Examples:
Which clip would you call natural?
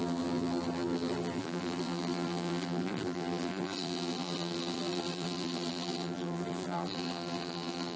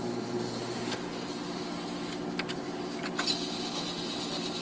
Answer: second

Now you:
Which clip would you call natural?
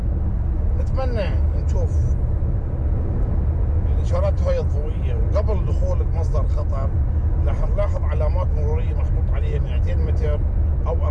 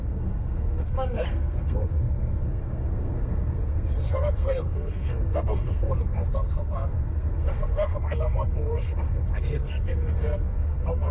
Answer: first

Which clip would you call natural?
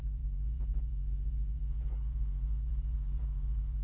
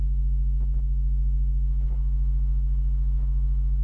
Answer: second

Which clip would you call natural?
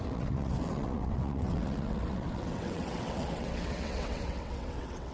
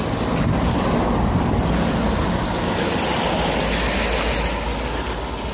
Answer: second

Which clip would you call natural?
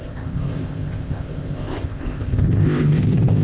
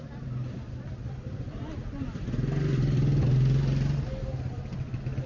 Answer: second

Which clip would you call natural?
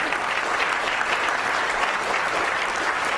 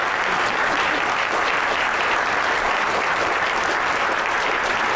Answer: second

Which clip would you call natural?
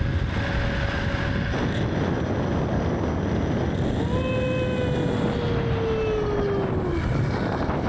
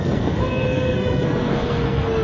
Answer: first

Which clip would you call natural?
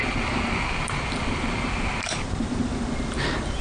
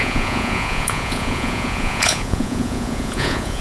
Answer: first